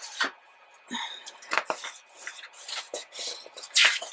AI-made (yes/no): no